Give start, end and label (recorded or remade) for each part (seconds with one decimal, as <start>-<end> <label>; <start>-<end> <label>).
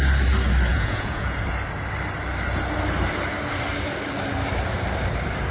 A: 0.0-0.7 recorded; 0.7-1.4 remade; 1.4-5.5 recorded